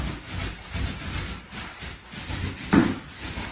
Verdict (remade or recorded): recorded